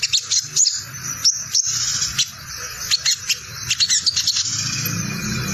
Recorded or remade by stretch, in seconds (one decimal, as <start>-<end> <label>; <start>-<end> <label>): 0.0-5.5 recorded